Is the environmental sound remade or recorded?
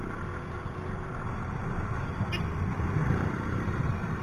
recorded